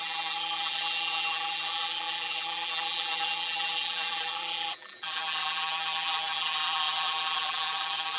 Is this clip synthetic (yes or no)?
yes